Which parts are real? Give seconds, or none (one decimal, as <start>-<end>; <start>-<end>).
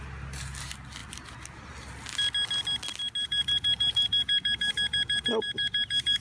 0.0-3.2